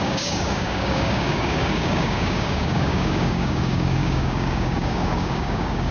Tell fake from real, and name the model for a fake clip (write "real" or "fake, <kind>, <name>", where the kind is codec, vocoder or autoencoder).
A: fake, codec, DAC